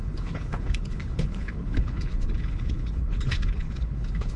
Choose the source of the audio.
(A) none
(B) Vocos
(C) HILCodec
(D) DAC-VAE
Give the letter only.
C